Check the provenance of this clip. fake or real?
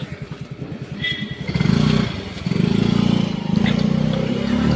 real